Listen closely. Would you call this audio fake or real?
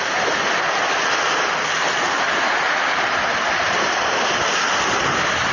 real